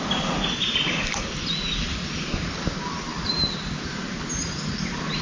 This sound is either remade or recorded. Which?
recorded